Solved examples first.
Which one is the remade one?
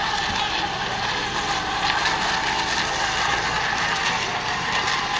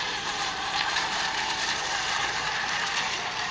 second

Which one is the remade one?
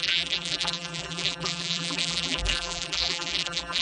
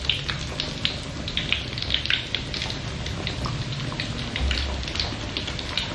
first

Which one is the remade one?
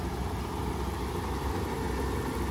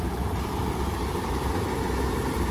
second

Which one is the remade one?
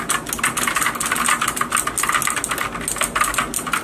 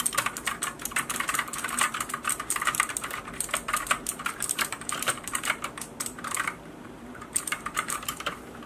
second